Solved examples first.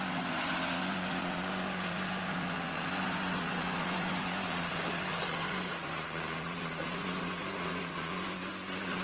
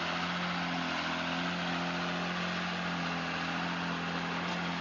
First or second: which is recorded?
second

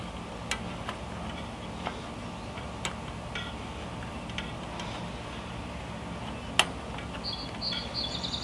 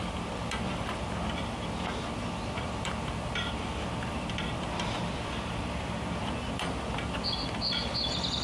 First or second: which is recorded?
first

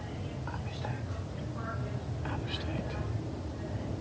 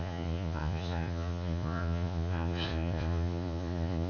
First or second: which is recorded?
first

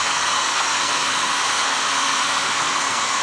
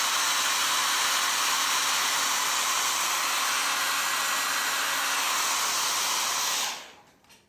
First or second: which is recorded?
second